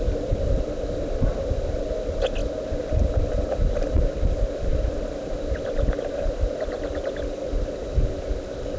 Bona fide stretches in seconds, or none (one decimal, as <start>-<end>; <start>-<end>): 0.0-8.8